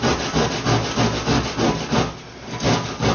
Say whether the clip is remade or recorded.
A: recorded